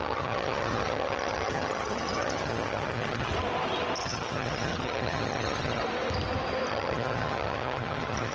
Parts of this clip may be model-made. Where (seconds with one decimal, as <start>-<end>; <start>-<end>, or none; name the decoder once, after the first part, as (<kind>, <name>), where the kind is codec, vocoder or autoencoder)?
0.0-3.3 (vocoder, HiFi-GAN); 4.0-5.8; 6.7-8.3